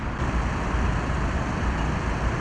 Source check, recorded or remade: recorded